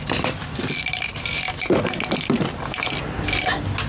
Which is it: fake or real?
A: real